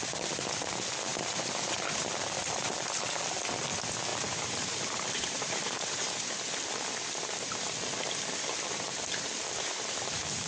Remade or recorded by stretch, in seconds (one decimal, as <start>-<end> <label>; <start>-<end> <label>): 0.0-1.1 recorded; 1.1-2.4 remade; 2.4-4.1 recorded; 4.1-6.0 remade; 6.0-10.5 recorded